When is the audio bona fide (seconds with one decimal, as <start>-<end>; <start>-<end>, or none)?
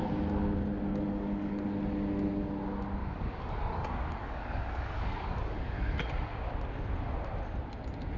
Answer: 0.0-0.9; 1.6-3.0; 5.9-8.2